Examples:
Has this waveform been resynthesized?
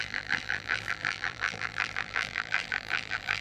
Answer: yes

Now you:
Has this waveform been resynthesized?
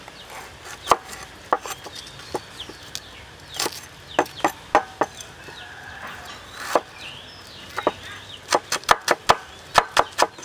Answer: no